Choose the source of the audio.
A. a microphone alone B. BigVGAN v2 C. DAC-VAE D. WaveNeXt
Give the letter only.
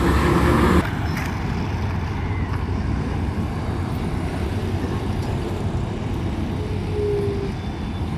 A